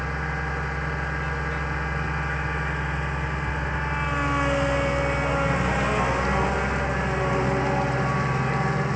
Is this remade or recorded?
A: recorded